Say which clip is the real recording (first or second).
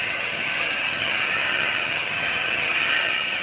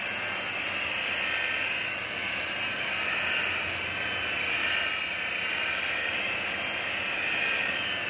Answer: second